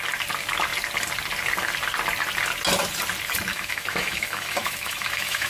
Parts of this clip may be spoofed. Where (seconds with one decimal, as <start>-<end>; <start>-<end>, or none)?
3.5-5.5